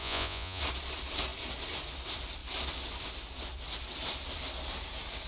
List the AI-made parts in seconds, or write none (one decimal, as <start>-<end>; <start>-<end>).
0.0-0.6